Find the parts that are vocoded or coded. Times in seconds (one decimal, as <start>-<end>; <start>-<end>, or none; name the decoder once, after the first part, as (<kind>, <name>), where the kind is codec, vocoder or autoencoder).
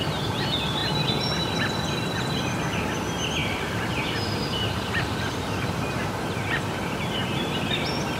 3.4-7.7 (vocoder, BigVGAN v2)